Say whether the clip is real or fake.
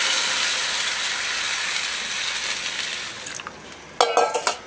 real